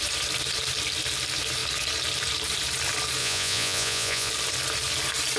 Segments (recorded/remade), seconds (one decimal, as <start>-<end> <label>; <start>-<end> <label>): 0.0-3.2 recorded; 3.2-4.3 remade; 4.3-5.4 recorded